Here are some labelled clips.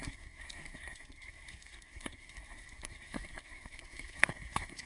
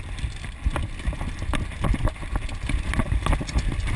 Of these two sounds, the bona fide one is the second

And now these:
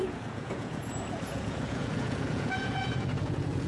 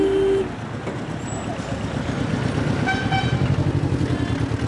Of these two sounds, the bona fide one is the second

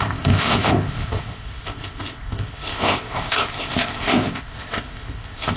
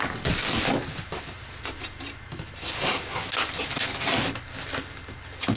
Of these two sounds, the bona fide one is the second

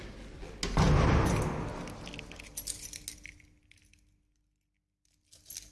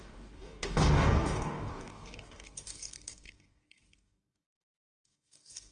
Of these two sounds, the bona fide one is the first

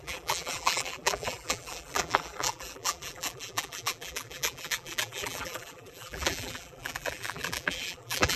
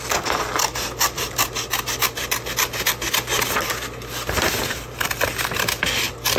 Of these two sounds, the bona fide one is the second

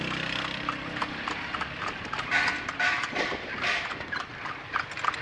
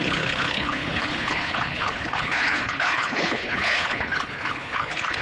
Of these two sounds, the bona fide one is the first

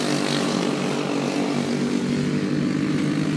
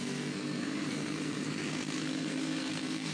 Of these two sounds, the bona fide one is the first